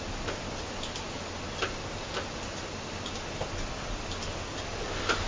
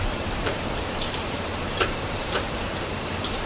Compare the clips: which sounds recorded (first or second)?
first